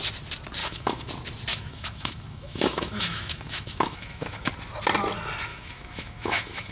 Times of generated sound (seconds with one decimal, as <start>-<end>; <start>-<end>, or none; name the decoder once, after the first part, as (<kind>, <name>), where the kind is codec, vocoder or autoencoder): 0.6-1.1 (autoencoder, DAC-VAE); 1.5-4.5; 5.5-6.7